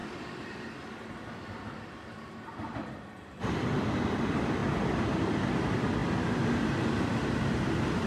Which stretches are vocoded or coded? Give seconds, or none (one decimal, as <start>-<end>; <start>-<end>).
none